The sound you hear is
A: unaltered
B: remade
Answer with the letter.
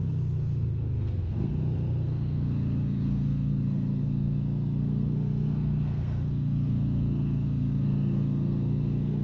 B